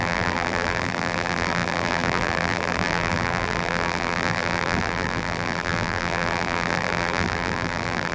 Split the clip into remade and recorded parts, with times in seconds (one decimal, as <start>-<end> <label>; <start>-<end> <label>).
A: 0.0-8.1 remade